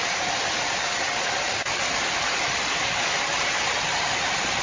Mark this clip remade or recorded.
recorded